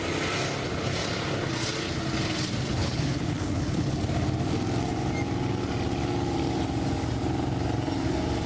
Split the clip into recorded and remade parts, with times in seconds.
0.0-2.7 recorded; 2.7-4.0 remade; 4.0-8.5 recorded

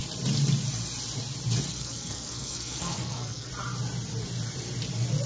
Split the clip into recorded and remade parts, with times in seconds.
0.0-1.7 recorded; 1.7-3.5 remade; 3.5-5.3 recorded

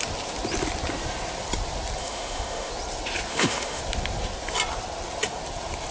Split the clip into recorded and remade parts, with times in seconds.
0.0-2.0 recorded; 2.0-2.7 remade; 2.7-3.3 recorded; 3.3-3.8 remade; 3.8-5.9 recorded

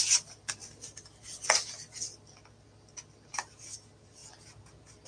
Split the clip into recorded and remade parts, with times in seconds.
0.0-5.1 recorded